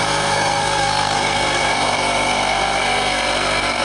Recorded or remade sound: remade